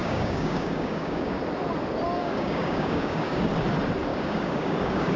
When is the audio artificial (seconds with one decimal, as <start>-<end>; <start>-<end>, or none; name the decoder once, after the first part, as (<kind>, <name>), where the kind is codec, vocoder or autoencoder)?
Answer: 0.0-1.4 (codec, DAC); 2.2-3.4; 4.1-5.2